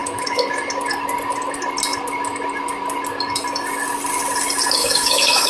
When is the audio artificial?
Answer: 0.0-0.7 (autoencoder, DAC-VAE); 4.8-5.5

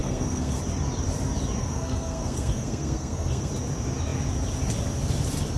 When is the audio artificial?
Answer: 0.0-0.6 (codec, SNAC); 1.6-3.5